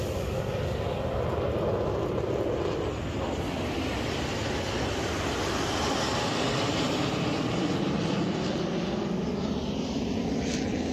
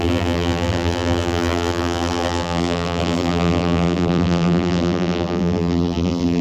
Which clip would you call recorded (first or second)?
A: first